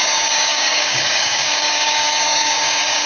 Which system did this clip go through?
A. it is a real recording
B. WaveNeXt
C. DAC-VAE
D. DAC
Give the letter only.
D